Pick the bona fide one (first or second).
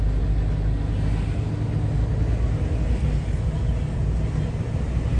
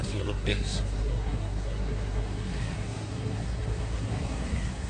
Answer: first